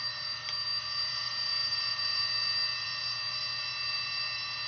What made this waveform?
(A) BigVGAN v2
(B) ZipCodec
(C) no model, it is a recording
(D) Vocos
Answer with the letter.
A